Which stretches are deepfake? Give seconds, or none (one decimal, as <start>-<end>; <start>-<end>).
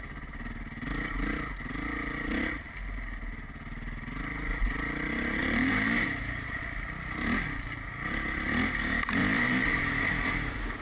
5.4-6.6; 9.2-10.0